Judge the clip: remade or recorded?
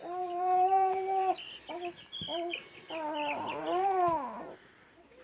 remade